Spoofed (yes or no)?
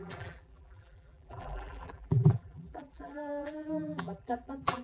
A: yes